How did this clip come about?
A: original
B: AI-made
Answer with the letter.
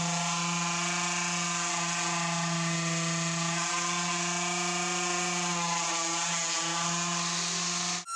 A